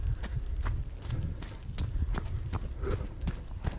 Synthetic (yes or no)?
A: no